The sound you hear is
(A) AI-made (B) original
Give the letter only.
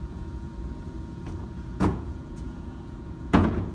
A